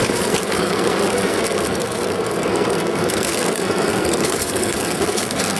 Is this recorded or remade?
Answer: remade